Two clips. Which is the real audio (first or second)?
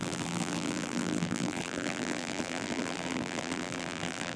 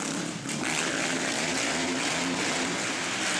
second